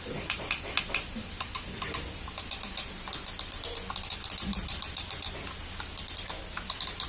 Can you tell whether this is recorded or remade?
remade